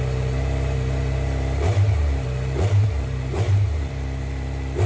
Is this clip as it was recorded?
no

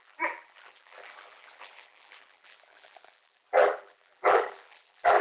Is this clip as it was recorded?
no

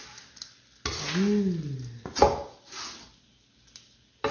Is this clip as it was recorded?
yes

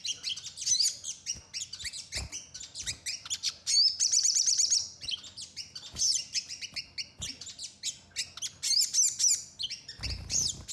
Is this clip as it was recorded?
yes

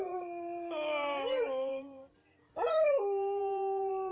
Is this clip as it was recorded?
no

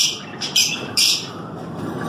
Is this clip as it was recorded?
no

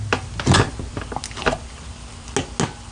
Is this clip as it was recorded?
yes